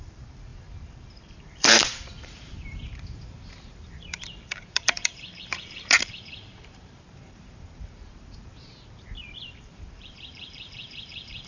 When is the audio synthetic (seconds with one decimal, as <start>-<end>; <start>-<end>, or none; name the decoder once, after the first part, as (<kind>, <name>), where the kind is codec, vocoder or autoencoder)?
0.0-11.5 (vocoder, BigVGAN v2)